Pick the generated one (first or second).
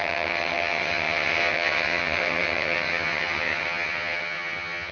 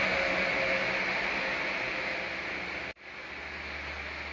first